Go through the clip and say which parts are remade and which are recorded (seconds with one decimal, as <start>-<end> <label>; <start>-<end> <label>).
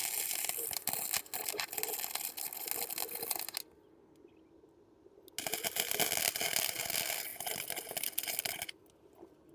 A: 0.0-9.5 recorded